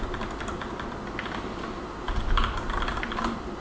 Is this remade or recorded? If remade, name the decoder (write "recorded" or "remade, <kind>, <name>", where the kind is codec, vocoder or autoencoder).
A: recorded